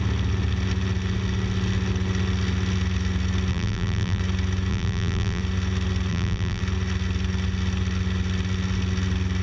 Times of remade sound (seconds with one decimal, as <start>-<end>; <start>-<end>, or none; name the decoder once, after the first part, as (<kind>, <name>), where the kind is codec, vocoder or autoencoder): 3.5-4.2 (vocoder, BigVGAN v2); 4.7-5.4; 6.1-6.6